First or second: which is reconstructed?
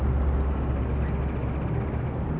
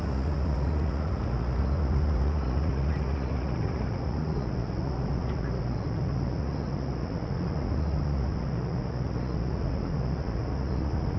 second